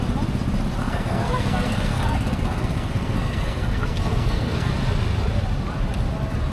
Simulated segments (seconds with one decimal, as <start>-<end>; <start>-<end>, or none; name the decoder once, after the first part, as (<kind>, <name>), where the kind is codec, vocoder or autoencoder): 0.8-4.7 (codec, SNAC)